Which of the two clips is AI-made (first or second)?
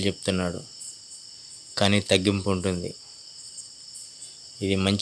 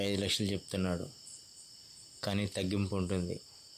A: second